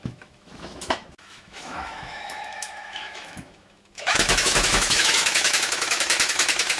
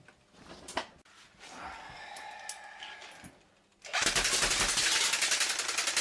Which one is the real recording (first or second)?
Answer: second